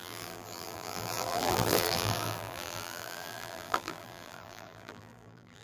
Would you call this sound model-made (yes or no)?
yes